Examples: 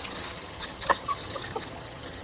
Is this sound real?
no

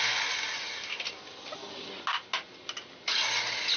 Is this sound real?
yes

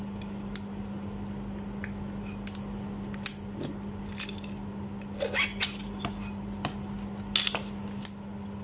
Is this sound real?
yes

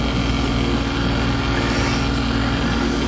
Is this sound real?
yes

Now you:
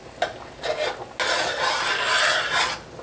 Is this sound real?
yes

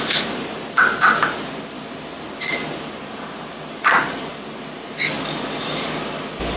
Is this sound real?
yes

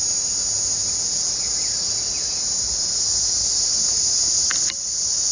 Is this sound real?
yes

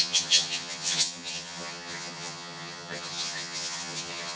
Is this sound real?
no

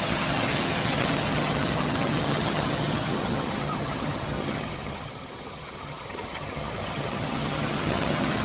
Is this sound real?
no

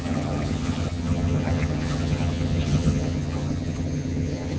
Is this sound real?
no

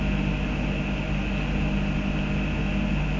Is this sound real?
yes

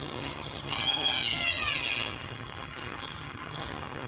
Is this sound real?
no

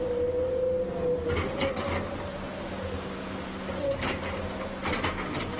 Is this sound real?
yes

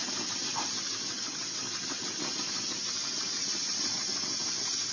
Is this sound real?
yes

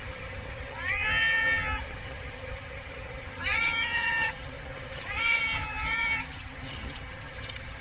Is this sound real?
no